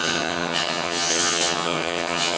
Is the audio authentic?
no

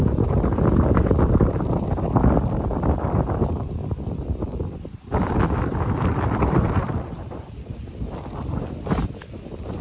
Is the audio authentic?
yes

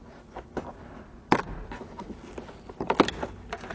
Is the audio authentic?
yes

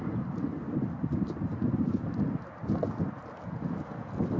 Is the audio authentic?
yes